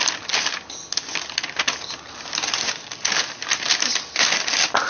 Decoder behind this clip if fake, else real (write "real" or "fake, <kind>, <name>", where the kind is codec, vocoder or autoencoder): real